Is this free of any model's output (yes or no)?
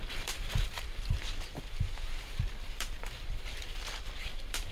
no